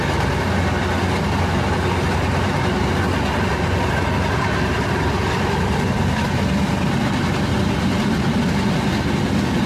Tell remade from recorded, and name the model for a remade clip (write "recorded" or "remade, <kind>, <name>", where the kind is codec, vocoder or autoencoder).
recorded